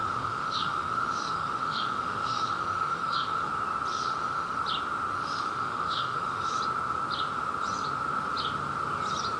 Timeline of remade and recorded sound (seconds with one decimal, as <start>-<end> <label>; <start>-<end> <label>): 0.0-3.5 remade; 3.5-3.9 recorded; 3.9-4.6 remade; 4.6-5.1 recorded; 5.1-6.6 remade; 6.6-9.4 recorded